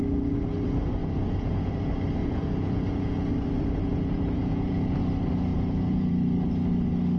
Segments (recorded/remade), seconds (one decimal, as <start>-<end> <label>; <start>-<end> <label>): 0.0-1.0 recorded; 1.0-1.8 remade; 1.8-2.2 recorded; 2.2-3.3 remade; 3.3-3.8 recorded; 3.8-5.0 remade; 5.0-5.5 recorded; 5.5-6.1 remade; 6.1-7.2 recorded